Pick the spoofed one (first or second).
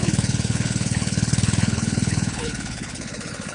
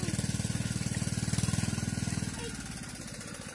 first